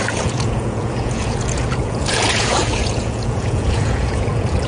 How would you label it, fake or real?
fake